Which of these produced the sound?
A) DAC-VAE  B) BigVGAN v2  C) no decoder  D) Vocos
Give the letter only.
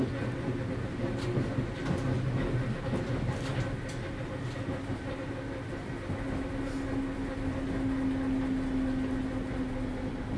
C